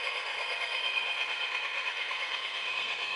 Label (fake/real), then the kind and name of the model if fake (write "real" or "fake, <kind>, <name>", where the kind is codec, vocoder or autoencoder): fake, codec, SNAC